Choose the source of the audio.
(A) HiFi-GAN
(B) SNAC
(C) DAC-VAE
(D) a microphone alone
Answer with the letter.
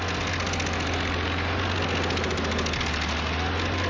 D